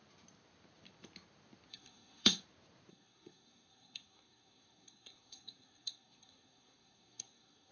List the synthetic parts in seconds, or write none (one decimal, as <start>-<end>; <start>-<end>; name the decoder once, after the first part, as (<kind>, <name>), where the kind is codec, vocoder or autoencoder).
1.7-2.4 (codec, SNAC); 2.9-7.7